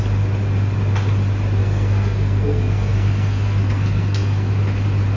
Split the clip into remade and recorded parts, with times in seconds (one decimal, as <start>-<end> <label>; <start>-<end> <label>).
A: 0.0-1.6 recorded; 1.6-4.5 remade; 4.5-5.2 recorded